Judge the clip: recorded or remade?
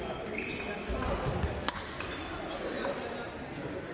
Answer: recorded